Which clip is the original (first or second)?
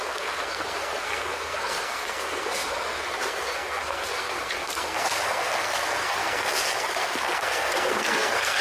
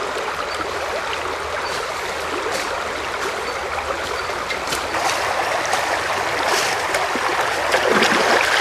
second